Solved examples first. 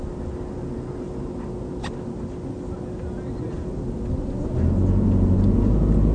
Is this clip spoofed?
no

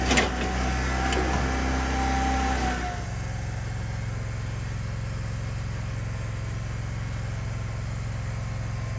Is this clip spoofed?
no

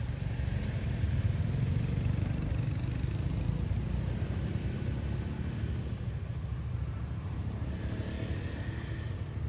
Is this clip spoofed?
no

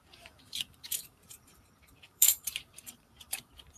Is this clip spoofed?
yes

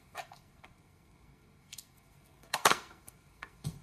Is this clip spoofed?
yes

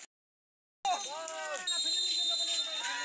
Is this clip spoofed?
no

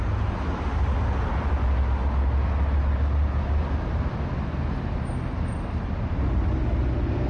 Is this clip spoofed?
no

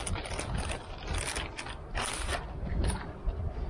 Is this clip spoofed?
no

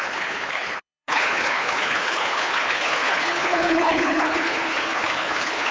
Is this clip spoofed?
yes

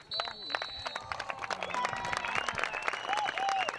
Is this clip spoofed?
no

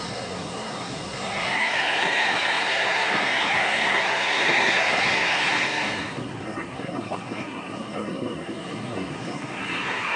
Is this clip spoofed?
yes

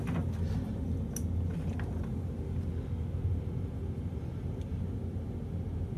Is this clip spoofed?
no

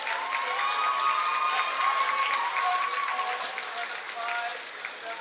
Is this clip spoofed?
no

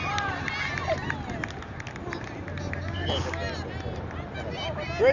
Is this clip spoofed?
no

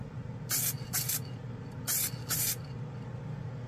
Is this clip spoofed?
no